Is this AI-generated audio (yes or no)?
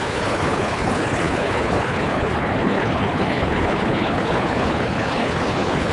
yes